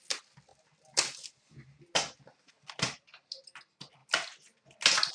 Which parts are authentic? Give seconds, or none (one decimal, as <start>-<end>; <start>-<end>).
0.0-5.1